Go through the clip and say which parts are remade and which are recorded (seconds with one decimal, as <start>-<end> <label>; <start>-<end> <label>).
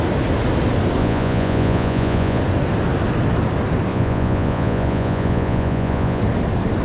0.0-1.0 recorded; 1.0-2.4 remade; 2.4-3.9 recorded; 3.9-6.2 remade; 6.2-6.8 recorded